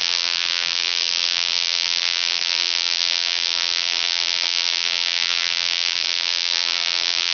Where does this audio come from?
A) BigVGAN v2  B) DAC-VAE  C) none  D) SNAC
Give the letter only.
A